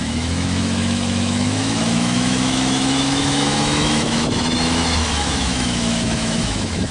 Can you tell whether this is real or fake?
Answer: fake